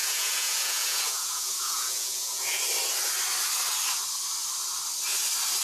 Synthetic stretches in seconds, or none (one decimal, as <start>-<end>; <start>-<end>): 0.0-2.6